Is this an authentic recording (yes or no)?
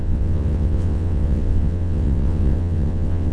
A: no